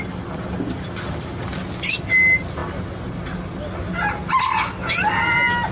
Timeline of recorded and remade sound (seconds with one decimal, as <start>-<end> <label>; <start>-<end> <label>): 0.0-5.7 recorded